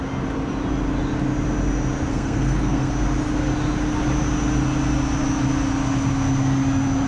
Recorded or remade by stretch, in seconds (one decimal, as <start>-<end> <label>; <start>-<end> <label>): 0.0-2.1 recorded; 2.1-2.9 remade; 2.9-7.1 recorded